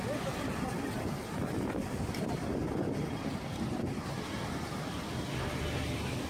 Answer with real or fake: fake